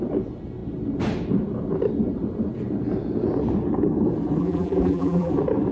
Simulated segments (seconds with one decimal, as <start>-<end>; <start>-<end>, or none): 4.4-5.3